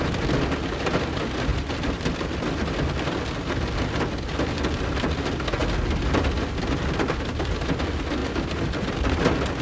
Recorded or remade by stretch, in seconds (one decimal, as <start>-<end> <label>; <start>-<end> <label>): 0.0-1.5 recorded; 1.5-2.0 remade; 2.0-8.2 recorded; 8.2-9.2 remade; 9.2-9.6 recorded